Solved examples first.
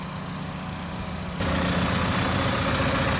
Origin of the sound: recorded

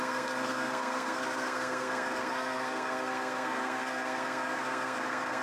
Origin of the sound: remade